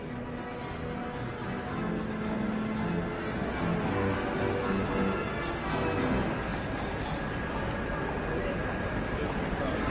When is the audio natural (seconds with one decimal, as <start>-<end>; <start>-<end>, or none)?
0.0-9.9